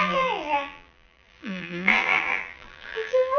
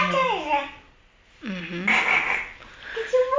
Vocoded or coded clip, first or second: first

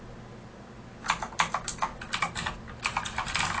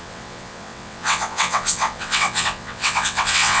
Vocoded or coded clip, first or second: second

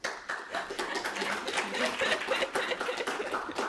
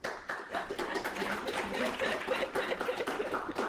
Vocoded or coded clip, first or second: second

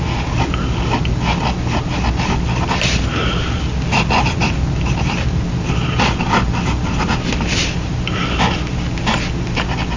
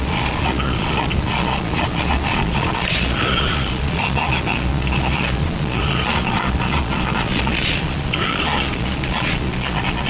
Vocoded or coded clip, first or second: second